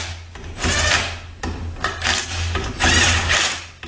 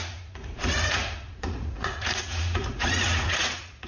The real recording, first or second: first